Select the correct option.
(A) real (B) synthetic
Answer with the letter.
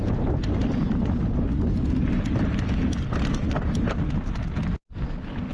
A